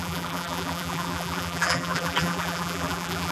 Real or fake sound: fake